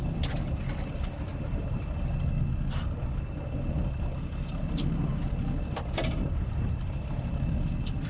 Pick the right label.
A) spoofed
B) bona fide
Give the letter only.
B